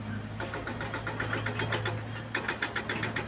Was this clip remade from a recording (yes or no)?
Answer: no